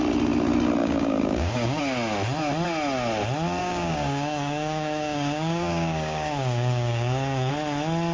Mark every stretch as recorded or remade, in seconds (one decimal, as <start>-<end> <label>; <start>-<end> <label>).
0.0-0.8 recorded; 0.8-1.8 remade; 1.8-3.6 recorded; 3.6-7.5 remade; 7.5-8.1 recorded